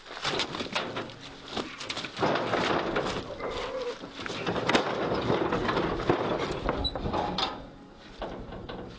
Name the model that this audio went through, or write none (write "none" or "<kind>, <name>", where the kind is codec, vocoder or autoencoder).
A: none